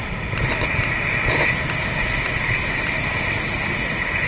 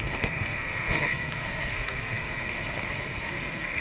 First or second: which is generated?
second